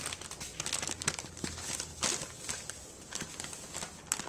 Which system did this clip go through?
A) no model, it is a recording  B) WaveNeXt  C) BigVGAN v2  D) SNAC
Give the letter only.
A